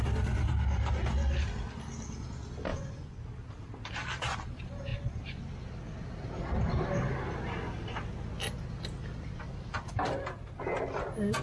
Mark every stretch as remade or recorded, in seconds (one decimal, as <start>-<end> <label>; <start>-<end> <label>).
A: 0.0-2.7 recorded; 2.7-3.2 remade; 3.2-11.4 recorded